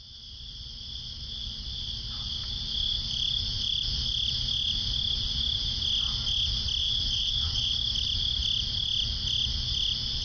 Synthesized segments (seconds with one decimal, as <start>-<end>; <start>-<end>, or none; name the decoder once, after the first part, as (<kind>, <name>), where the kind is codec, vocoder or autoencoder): 6.8-7.7 (vocoder, WaveNeXt)